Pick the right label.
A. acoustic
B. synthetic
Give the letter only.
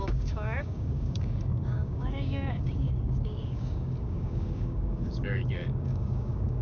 B